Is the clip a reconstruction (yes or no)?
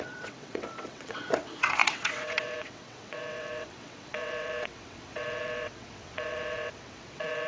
yes